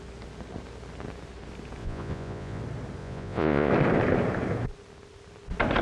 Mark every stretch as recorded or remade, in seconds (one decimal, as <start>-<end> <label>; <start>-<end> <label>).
0.0-1.8 recorded; 1.8-2.6 remade; 2.6-3.0 recorded; 3.0-3.7 remade; 3.7-5.8 recorded